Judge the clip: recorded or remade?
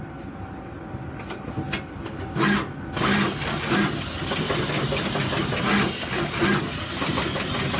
recorded